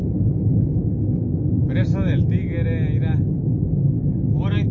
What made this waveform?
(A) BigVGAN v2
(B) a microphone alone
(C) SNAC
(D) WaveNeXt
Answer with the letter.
B